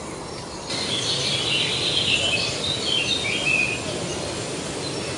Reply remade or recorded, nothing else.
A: recorded